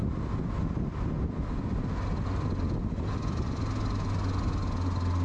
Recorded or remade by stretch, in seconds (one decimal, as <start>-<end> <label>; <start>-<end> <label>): 0.0-5.2 recorded